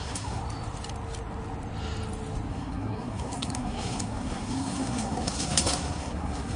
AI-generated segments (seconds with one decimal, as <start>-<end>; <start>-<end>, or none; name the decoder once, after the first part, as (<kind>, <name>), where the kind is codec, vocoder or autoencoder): 0.0-0.4 (codec, SNAC); 2.5-6.6